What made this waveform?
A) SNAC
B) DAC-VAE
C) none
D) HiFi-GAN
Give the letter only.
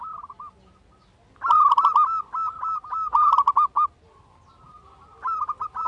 C